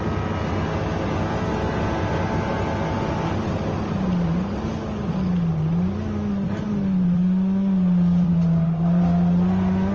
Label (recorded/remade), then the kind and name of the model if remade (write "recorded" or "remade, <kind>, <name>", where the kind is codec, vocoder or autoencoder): recorded